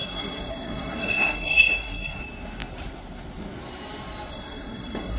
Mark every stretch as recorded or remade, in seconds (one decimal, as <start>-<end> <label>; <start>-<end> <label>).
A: 0.0-2.2 remade; 2.2-4.3 recorded; 4.3-5.2 remade